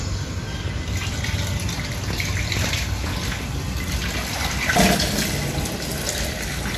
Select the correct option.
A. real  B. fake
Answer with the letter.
A